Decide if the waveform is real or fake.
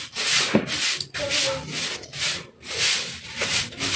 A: real